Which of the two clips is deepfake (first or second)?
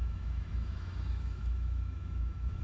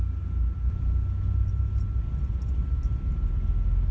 first